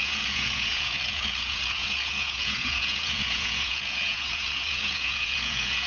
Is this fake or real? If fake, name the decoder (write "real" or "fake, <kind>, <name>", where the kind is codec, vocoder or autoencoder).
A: fake, vocoder, Vocos